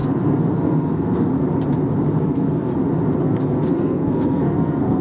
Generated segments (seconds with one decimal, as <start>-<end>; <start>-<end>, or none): 0.0-1.3; 2.2-2.7; 3.2-5.0